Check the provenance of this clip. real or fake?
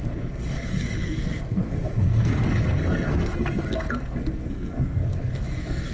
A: fake